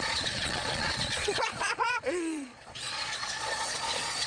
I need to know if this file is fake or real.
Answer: fake